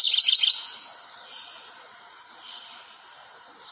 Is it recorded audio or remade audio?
recorded